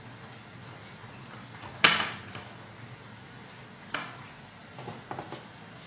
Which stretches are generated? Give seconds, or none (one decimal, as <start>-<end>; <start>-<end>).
none